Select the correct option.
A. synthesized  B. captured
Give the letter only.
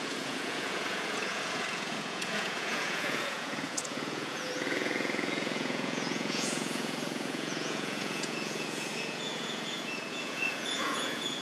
A